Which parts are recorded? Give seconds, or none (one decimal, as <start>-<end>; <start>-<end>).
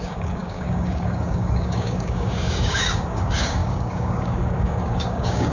none